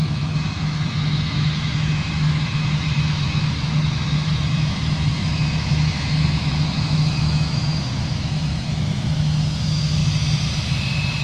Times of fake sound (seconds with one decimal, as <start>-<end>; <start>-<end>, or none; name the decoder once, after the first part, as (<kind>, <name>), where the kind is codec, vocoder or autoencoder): 0.0-10.0 (autoencoder, DAC-VAE)